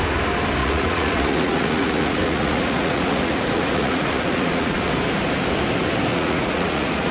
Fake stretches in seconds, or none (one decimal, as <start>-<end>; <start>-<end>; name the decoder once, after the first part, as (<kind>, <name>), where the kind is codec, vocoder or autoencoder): 0.6-4.9 (vocoder, Vocos); 6.1-7.1